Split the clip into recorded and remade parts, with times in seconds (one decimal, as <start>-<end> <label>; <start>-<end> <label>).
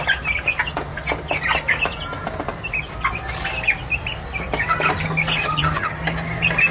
0.0-5.4 recorded; 5.4-6.0 remade; 6.0-6.7 recorded